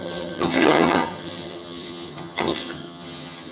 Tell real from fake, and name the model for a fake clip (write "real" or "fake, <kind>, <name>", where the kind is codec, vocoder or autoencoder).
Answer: fake, vocoder, HiFi-GAN